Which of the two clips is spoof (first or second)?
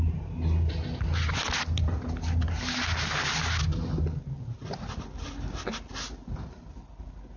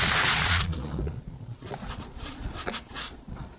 second